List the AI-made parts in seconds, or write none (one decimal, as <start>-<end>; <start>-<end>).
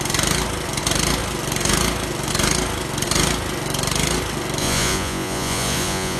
4.6-6.2